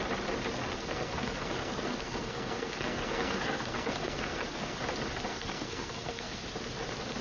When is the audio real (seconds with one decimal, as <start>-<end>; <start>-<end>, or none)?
0.0-0.6; 4.8-5.3; 6.4-7.2